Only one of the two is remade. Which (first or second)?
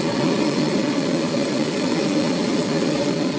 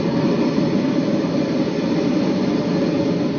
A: first